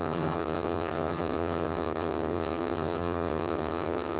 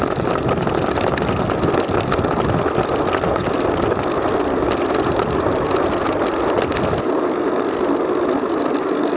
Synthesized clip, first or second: first